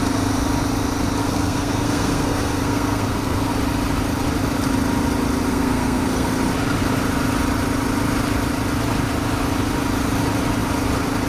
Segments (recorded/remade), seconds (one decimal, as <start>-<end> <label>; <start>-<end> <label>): 0.0-1.2 recorded; 1.2-3.5 remade; 3.5-5.5 recorded; 5.5-6.3 remade; 6.3-11.3 recorded